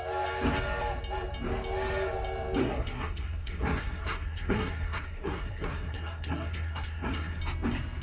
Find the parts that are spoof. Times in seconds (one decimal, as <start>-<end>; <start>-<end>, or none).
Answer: 2.6-7.4